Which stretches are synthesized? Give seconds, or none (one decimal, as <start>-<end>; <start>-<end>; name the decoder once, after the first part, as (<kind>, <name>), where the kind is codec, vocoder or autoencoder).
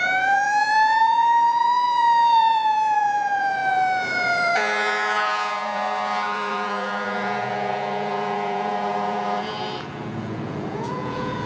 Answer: 0.0-11.5 (vocoder, Vocos)